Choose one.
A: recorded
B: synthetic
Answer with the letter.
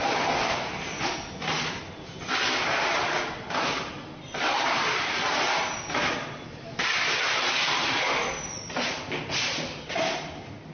A